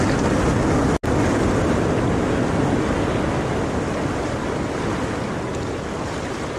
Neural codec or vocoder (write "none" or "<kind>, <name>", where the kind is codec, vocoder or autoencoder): none